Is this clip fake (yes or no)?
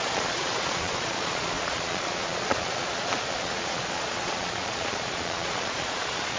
yes